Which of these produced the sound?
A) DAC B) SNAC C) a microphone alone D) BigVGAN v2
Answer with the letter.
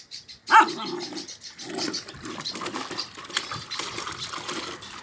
C